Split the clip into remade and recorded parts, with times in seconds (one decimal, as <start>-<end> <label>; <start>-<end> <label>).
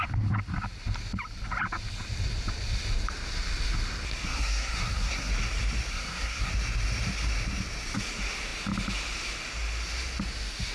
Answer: 0.0-4.3 recorded; 4.3-5.3 remade; 5.3-5.9 recorded; 5.9-6.5 remade; 6.5-10.7 recorded